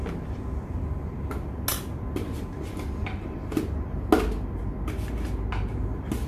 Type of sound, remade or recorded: recorded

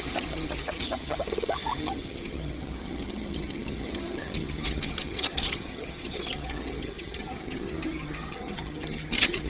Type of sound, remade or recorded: remade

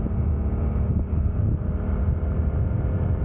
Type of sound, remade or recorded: recorded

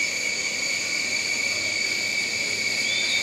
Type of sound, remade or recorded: recorded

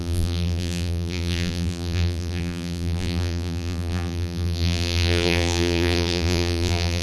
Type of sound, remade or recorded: remade